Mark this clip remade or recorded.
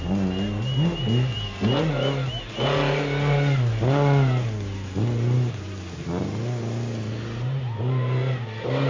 recorded